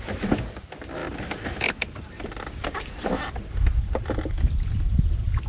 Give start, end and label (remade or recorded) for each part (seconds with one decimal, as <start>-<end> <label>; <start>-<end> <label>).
0.0-5.5 recorded